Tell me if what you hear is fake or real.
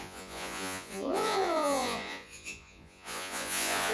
fake